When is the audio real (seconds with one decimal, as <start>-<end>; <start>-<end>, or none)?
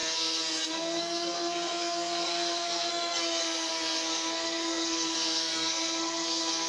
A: none